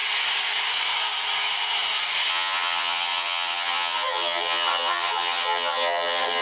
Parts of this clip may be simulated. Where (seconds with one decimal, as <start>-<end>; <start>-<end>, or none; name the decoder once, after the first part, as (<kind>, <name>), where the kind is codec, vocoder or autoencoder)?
2.3-6.4 (vocoder, HiFi-GAN)